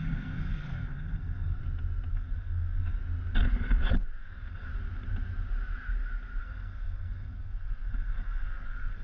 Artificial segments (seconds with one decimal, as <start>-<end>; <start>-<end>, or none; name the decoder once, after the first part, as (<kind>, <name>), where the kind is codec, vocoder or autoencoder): 0.0-1.6 (codec, SNAC); 2.1-3.0; 4.2-4.7; 6.4-9.0